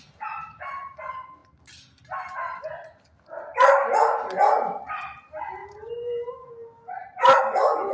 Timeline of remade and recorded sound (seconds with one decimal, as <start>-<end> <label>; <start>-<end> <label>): 0.0-5.6 recorded; 5.6-7.4 remade; 7.4-7.9 recorded